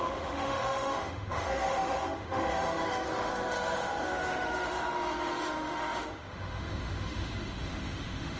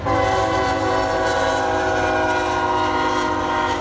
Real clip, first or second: second